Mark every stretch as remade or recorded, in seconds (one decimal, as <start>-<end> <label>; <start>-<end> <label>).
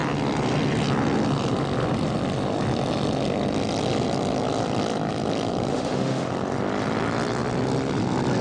0.0-5.7 recorded; 5.7-6.3 remade; 6.3-8.4 recorded